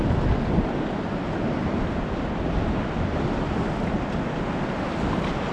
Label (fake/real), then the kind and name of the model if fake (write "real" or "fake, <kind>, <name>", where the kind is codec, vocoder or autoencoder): real